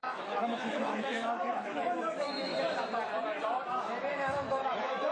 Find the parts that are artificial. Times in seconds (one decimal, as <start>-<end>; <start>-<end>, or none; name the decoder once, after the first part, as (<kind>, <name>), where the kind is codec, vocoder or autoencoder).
0.0-2.5 (autoencoder, DAC-VAE); 4.1-5.1